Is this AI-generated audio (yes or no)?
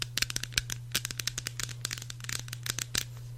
no